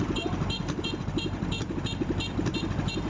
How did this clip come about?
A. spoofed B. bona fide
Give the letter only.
A